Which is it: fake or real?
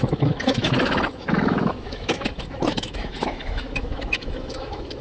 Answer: fake